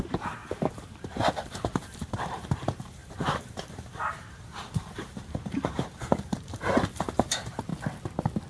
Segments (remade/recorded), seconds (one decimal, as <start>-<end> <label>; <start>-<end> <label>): 0.0-7.7 remade; 7.7-8.5 recorded